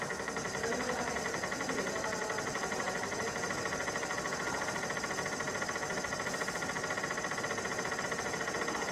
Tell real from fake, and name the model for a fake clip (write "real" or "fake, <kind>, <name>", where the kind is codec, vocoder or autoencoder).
real